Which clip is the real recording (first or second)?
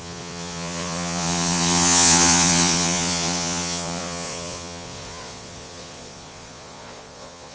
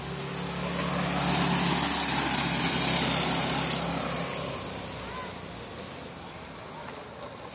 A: second